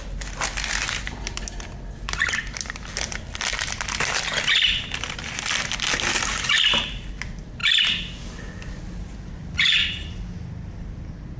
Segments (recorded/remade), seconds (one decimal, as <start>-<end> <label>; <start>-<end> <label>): 0.0-11.4 recorded